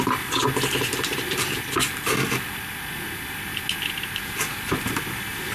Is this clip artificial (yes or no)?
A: no